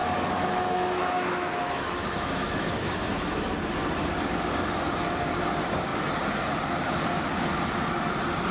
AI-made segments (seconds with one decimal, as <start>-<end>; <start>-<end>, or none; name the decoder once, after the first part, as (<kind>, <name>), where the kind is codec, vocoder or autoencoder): 0.0-3.5 (autoencoder, DAC-VAE)